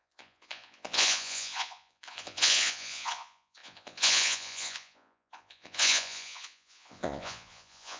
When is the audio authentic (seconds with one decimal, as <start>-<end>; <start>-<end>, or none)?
none